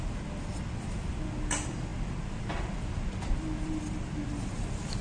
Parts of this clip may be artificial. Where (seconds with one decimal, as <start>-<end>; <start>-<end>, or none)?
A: none